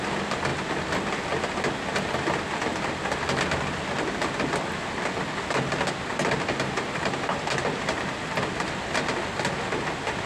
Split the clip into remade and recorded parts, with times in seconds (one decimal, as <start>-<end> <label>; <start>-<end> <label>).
0.0-10.3 recorded